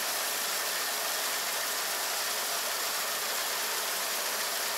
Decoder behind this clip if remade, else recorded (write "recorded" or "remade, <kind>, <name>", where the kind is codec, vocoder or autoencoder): remade, vocoder, BigVGAN v2